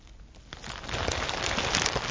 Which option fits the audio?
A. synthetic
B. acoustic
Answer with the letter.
B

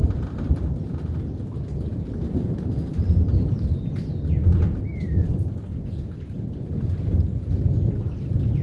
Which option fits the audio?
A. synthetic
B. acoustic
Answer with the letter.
A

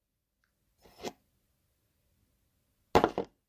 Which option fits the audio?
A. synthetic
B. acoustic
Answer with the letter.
B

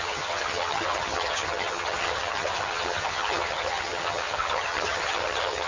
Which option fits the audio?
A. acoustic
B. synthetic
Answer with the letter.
B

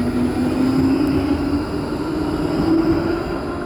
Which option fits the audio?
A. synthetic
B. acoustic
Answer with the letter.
B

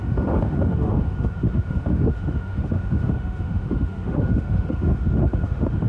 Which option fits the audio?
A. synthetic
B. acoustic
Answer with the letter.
A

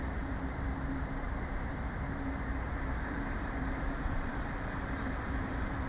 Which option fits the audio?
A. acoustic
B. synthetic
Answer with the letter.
B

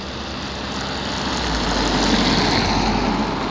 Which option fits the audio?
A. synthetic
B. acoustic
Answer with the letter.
B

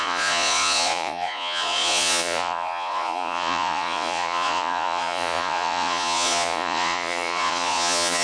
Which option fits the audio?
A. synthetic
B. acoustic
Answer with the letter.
A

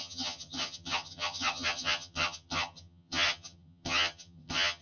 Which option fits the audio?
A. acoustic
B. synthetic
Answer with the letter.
B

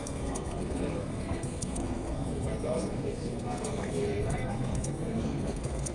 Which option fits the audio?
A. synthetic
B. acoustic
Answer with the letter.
A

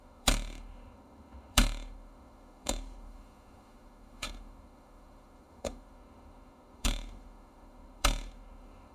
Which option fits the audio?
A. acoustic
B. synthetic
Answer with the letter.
B